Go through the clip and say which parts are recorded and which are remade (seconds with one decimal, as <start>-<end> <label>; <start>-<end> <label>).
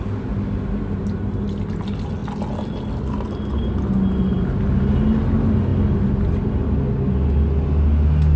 0.0-8.4 recorded